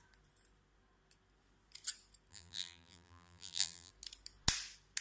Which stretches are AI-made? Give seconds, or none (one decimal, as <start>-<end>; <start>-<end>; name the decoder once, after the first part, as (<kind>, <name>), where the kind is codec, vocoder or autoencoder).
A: 2.3-3.9 (vocoder, BigVGAN v2)